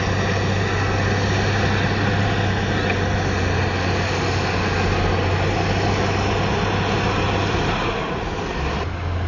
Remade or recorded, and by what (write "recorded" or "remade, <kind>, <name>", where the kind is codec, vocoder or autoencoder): recorded